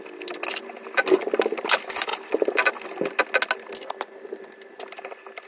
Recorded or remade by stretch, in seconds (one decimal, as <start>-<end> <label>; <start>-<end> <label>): 0.0-5.5 recorded